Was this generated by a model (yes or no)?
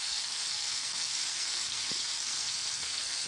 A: yes